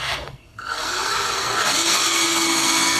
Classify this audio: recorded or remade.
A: remade